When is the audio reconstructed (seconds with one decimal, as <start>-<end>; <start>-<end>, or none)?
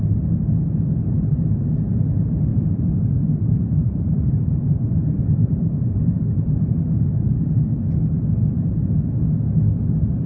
2.5-7.5